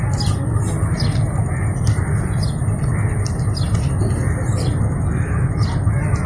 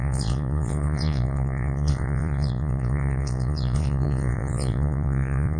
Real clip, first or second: first